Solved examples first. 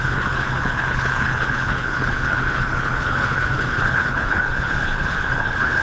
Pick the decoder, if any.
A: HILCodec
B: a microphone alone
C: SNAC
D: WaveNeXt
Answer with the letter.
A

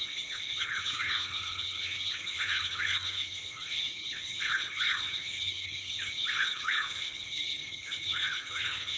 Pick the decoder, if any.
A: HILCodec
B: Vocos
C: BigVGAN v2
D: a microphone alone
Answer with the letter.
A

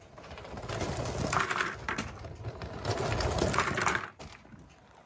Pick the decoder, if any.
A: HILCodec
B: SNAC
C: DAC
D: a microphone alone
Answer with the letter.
D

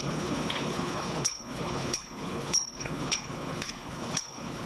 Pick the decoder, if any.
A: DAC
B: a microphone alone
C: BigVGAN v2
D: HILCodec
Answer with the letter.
D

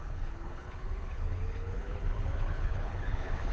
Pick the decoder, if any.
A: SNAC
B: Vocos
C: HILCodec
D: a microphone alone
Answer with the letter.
C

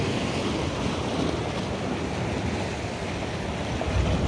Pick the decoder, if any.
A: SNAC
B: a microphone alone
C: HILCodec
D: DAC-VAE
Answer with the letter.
B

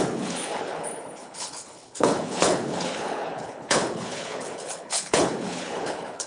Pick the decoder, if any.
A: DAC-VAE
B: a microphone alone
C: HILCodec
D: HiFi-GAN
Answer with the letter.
C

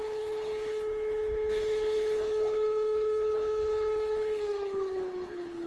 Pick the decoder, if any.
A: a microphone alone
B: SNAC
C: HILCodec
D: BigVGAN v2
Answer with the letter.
C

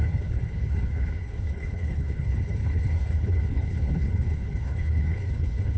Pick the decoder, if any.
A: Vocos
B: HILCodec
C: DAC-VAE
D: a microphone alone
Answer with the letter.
B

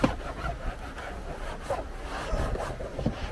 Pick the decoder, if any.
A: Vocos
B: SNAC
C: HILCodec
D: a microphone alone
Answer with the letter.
D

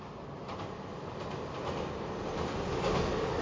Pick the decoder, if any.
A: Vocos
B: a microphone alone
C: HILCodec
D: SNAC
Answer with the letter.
B